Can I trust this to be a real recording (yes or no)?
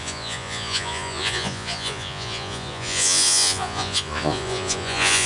no